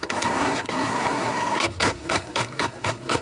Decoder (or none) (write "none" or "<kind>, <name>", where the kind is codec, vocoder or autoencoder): codec, SNAC